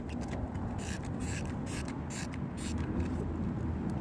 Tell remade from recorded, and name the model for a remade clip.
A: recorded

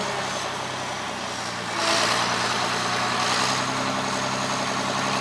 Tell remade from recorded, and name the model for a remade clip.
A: recorded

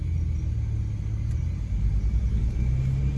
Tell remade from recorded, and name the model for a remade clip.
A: recorded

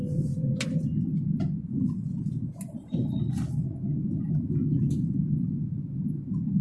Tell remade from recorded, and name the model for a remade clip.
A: recorded